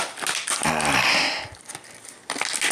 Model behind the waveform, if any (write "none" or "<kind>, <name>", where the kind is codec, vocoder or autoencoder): none